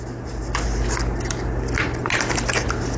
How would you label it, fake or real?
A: real